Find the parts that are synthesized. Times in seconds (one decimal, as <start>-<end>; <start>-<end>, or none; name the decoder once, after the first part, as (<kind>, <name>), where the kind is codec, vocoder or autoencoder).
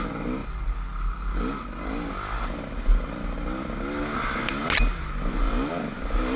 none